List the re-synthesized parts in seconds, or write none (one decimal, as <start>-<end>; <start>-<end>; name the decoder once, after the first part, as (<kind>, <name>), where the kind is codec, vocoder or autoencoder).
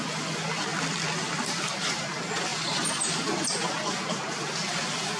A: 0.7-1.7 (vocoder, BigVGAN v2); 2.5-3.1